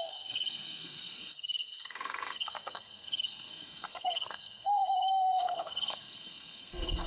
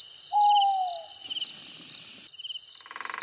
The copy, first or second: first